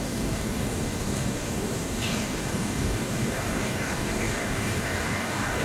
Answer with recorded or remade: remade